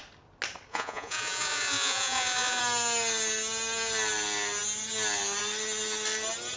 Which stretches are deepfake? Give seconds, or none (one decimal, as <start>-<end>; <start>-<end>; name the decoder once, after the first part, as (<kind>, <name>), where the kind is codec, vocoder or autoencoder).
0.7-2.6 (vocoder, Vocos)